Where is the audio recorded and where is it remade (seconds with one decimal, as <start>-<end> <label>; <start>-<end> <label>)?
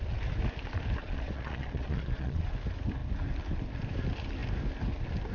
0.0-1.0 recorded; 1.0-2.5 remade; 2.5-5.3 recorded